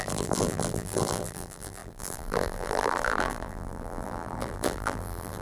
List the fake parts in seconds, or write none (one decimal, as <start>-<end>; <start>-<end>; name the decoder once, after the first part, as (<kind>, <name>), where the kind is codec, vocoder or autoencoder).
0.0-5.4 (vocoder, BigVGAN v2)